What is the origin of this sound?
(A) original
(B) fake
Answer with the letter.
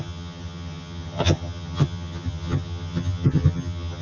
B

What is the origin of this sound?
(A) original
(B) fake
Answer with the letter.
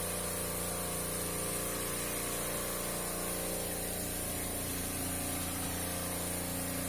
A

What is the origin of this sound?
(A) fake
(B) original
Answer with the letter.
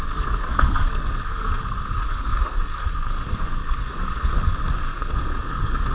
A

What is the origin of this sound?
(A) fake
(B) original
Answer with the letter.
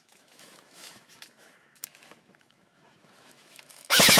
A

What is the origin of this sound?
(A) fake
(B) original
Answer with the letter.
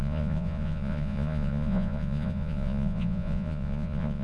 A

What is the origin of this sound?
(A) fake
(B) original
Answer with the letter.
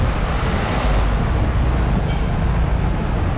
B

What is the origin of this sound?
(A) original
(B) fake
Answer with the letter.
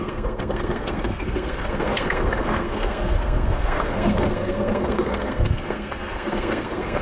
B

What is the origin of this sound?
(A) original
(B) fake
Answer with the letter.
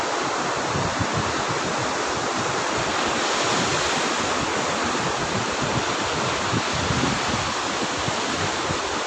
A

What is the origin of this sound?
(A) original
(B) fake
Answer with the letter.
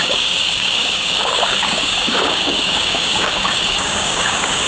B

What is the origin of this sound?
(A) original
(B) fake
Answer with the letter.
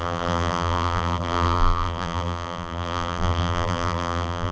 B